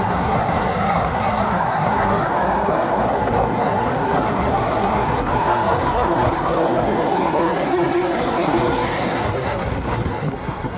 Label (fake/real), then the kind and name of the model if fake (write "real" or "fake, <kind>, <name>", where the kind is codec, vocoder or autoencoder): fake, codec, SNAC